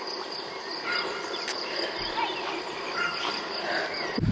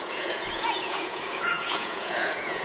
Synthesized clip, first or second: second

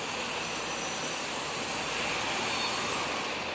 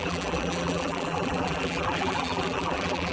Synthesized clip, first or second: second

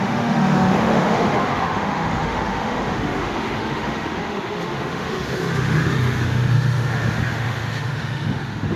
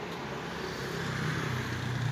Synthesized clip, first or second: first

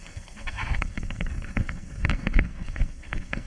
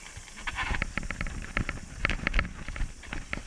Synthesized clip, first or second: first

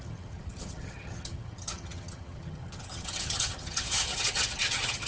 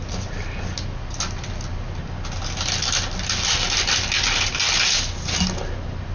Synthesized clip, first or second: first